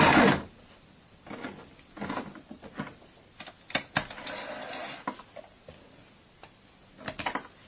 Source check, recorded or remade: recorded